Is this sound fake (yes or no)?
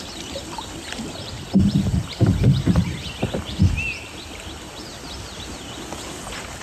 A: no